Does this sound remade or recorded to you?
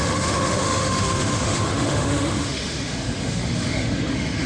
remade